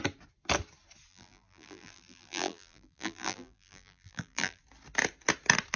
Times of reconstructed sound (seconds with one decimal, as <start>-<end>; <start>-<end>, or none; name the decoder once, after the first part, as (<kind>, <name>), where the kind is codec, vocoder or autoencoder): 1.1-4.6 (vocoder, BigVGAN v2)